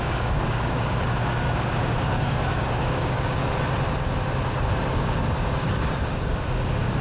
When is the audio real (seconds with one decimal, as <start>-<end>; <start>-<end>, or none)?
3.4-4.9